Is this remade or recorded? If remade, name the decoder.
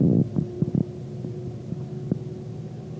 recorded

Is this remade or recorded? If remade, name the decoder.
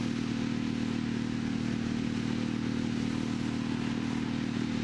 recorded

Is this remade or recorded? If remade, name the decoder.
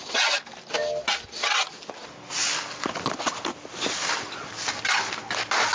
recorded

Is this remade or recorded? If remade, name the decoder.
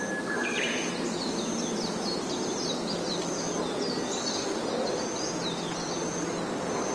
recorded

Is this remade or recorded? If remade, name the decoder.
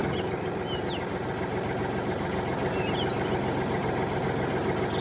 recorded